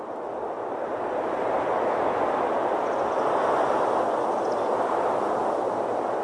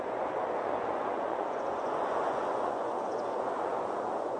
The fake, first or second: second